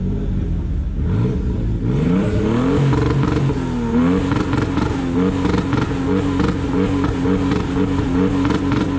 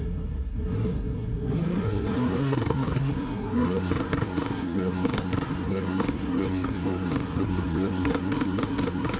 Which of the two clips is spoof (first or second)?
second